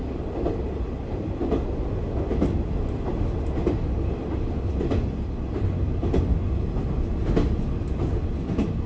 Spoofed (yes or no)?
no